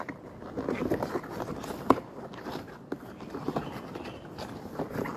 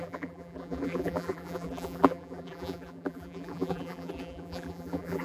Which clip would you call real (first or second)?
first